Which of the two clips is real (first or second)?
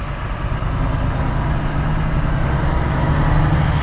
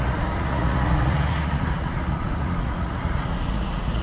first